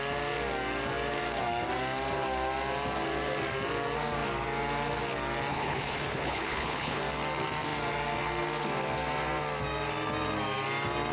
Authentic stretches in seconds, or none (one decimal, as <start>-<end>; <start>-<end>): 0.0-5.5; 7.0-11.1